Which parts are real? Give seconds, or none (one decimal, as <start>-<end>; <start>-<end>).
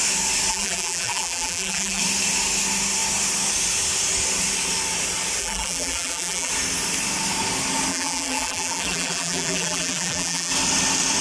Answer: 0.0-0.5; 2.0-5.4; 6.5-7.9; 10.5-11.2